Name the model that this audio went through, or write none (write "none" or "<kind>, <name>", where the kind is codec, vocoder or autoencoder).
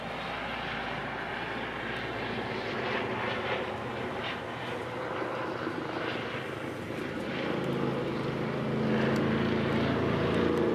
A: none